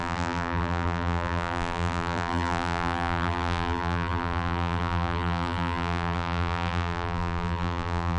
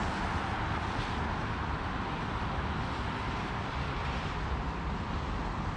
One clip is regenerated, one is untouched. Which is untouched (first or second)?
second